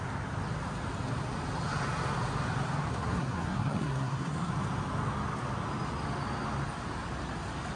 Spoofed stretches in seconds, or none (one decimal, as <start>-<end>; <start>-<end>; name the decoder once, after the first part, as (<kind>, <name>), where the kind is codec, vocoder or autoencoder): 2.9-4.5 (codec, SNAC)